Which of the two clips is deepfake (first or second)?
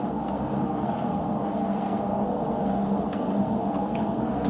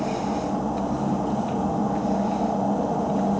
first